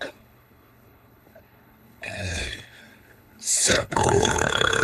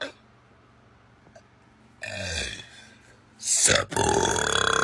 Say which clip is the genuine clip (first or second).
second